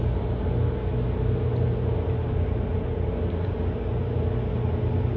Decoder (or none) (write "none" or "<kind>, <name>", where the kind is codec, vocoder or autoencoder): none